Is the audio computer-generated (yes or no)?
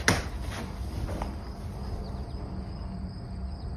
no